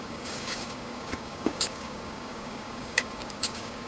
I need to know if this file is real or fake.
fake